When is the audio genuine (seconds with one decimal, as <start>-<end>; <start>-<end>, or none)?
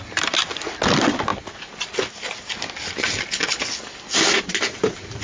0.0-5.2